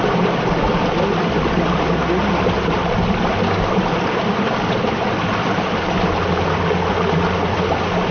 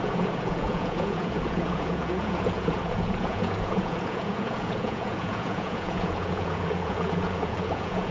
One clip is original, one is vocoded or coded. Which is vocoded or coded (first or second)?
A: second